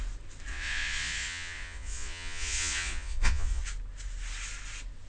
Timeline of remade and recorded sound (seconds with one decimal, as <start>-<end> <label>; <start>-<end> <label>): 0.0-0.5 recorded; 0.5-3.6 remade; 3.6-5.1 recorded